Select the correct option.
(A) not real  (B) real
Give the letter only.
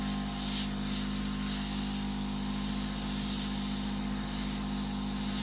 B